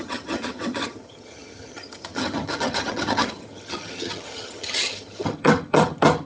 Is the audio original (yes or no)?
no